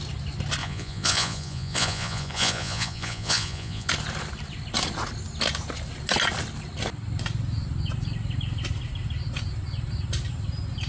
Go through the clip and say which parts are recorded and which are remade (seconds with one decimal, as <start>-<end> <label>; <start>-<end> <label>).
0.0-0.6 recorded; 0.6-3.9 remade; 3.9-10.9 recorded

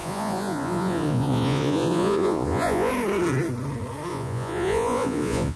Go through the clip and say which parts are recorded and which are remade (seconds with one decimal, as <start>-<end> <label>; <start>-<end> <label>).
0.0-2.9 remade; 2.9-4.1 recorded; 4.1-5.6 remade

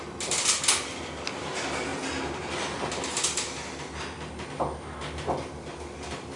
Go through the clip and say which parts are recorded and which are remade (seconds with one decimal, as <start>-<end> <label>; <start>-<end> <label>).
0.0-6.4 recorded

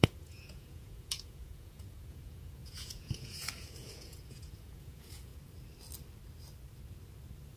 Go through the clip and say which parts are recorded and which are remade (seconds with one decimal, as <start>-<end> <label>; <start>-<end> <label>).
0.0-5.3 remade; 5.3-7.6 recorded